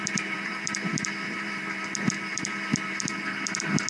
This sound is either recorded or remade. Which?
remade